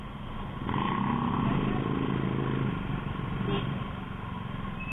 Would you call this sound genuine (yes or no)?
yes